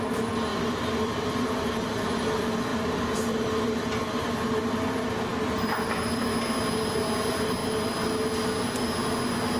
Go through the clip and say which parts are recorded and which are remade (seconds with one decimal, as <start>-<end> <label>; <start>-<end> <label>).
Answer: 0.0-0.5 recorded; 0.5-1.3 remade; 1.3-2.7 recorded; 2.7-3.8 remade; 3.8-5.3 recorded; 5.3-6.3 remade; 6.3-7.6 recorded; 7.6-8.1 remade; 8.1-9.6 recorded